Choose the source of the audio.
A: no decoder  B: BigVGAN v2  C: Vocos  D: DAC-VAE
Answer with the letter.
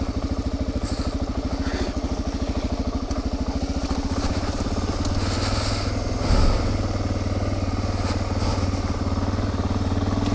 A